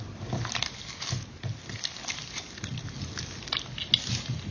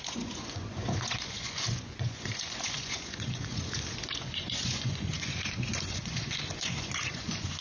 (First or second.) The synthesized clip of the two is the second